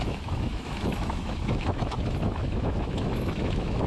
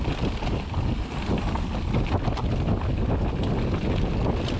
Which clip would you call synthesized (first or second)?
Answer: first